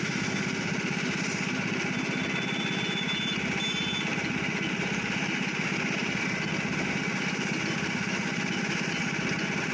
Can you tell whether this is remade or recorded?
recorded